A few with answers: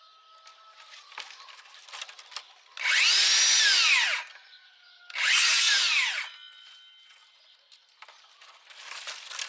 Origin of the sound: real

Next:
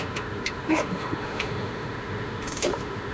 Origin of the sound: fake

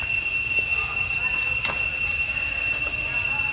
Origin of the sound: real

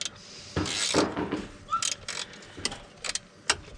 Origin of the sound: real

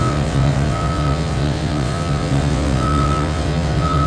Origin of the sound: fake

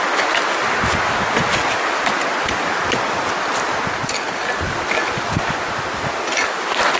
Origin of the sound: real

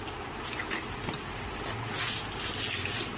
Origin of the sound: real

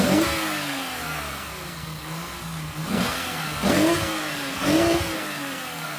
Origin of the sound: fake